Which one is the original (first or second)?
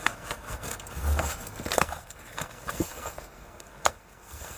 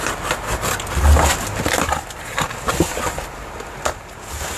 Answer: second